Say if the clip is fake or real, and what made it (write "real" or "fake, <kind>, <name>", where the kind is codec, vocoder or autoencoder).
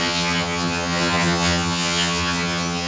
fake, vocoder, HiFi-GAN